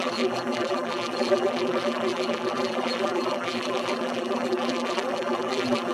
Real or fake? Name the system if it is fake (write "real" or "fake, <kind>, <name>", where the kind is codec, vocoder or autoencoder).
fake, vocoder, BigVGAN v2